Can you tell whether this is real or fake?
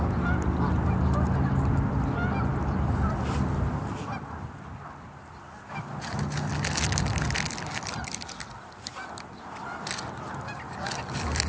real